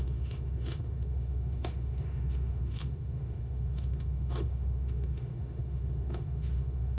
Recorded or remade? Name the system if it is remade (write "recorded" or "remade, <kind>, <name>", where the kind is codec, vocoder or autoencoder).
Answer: remade, autoencoder, DAC-VAE